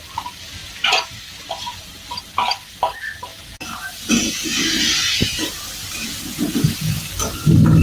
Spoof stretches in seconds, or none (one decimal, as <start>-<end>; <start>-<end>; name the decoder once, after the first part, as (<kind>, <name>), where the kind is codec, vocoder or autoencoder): 3.3-5.5 (vocoder, Vocos); 6.0-6.7